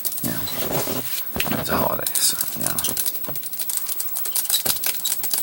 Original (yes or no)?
yes